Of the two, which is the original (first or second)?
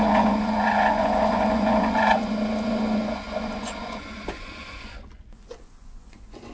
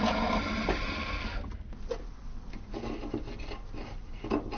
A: second